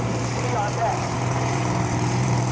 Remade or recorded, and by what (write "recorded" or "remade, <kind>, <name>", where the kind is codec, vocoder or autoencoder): remade, vocoder, BigVGAN v2